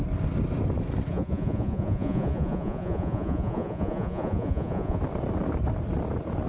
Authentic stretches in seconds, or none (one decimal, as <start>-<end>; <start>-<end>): 0.0-1.1; 5.0-6.5